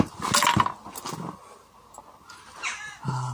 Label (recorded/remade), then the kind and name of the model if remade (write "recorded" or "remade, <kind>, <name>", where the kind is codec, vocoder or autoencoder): recorded